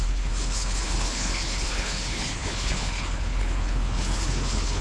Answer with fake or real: fake